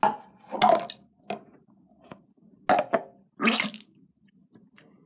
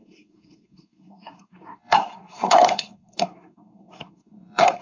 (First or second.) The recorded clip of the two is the first